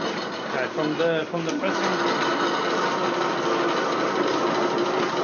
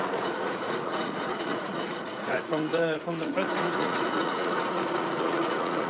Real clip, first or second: first